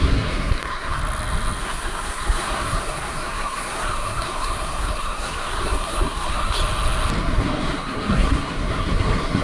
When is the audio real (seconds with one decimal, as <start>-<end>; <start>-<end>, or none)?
1.0-1.6; 6.6-7.2